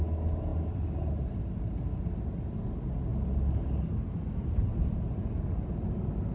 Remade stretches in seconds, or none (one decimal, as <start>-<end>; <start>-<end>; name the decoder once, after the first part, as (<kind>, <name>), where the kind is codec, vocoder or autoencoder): 0.5-1.9 (vocoder, BigVGAN v2); 3.1-5.2